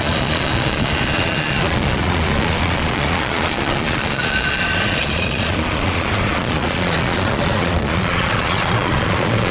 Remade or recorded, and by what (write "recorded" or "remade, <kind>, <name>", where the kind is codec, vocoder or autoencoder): remade, vocoder, Vocos